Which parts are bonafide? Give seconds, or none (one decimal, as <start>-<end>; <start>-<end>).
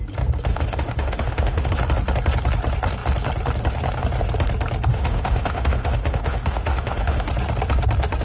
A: 0.0-0.5; 1.7-4.9; 7.3-8.2